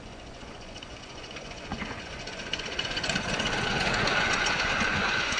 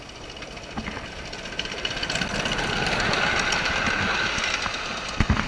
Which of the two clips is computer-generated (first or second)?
first